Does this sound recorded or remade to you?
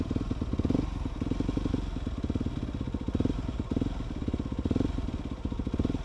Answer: recorded